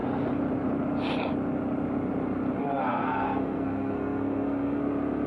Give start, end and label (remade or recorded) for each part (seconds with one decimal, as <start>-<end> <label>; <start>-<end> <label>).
0.0-2.6 recorded; 2.6-4.8 remade; 4.8-5.3 recorded